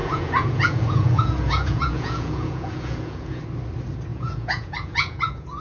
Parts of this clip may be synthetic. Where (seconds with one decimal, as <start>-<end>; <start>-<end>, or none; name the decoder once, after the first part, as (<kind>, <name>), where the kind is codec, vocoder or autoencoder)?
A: 0.0-3.4 (vocoder, Vocos); 4.1-5.6